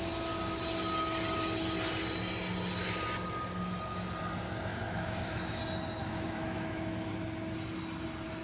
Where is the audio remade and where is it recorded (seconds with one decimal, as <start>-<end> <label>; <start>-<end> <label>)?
0.0-4.7 recorded; 4.7-5.6 remade; 5.6-6.0 recorded; 6.0-7.1 remade; 7.1-8.4 recorded